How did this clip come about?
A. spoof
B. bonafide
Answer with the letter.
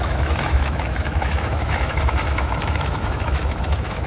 A